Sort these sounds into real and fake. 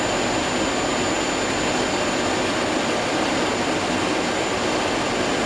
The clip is real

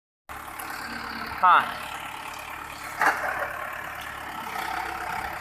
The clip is real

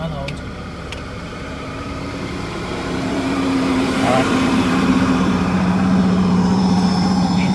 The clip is fake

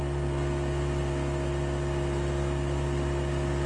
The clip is real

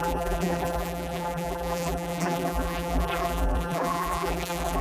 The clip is fake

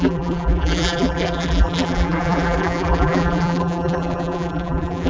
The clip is fake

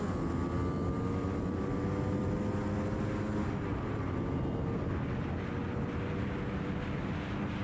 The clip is real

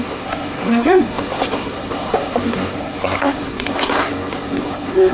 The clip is fake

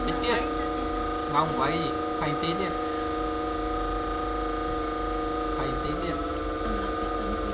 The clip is real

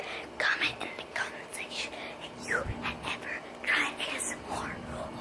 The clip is real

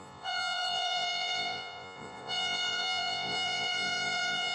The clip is fake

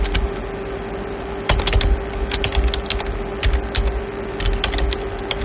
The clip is real